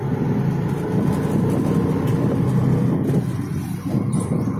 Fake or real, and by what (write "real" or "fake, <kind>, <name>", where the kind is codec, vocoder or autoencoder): real